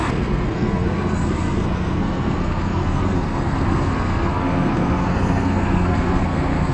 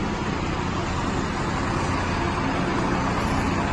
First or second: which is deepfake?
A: first